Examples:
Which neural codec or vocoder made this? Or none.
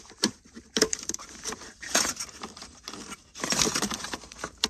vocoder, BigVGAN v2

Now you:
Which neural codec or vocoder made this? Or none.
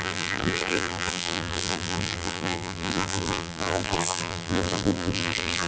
vocoder, BigVGAN v2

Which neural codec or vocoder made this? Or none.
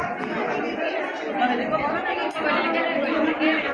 none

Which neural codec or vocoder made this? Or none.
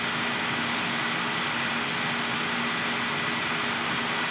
none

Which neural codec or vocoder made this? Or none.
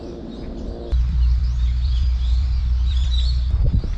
vocoder, BigVGAN v2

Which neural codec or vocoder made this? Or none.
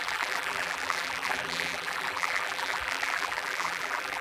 vocoder, BigVGAN v2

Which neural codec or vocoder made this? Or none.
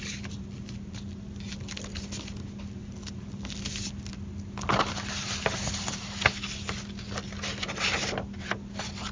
none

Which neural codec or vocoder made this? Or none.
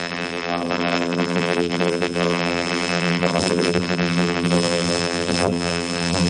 vocoder, BigVGAN v2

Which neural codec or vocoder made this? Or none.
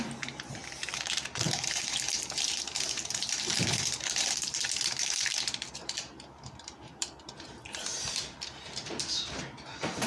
vocoder, BigVGAN v2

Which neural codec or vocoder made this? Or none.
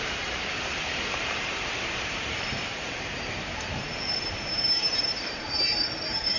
vocoder, BigVGAN v2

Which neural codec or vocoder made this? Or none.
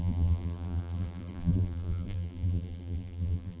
vocoder, BigVGAN v2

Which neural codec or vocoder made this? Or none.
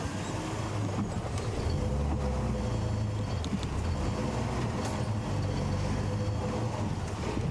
none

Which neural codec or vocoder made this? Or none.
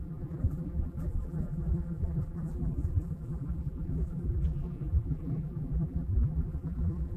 vocoder, BigVGAN v2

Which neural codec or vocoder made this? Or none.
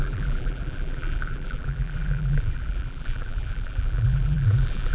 vocoder, BigVGAN v2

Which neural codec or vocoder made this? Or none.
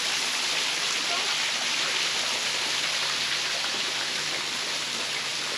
vocoder, BigVGAN v2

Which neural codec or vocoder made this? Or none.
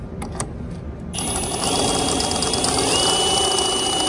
none